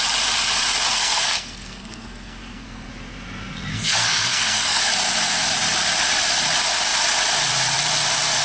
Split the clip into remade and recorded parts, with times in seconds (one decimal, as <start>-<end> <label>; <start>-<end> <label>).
0.0-0.9 recorded; 0.9-2.9 remade; 2.9-3.7 recorded; 3.7-4.8 remade; 4.8-8.4 recorded